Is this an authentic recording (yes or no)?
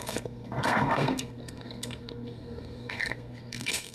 no